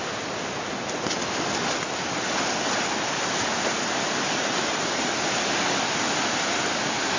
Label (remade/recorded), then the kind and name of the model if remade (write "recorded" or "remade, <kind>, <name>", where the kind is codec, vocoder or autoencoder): recorded